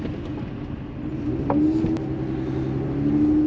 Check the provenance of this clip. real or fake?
real